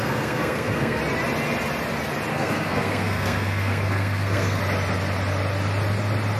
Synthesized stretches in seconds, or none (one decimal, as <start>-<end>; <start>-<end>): 0.0-1.0; 2.3-4.6